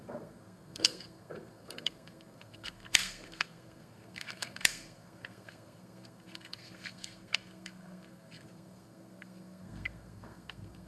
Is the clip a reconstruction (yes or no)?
yes